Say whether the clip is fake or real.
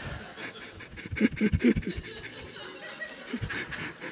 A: real